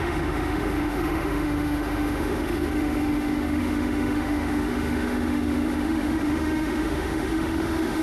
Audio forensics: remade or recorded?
remade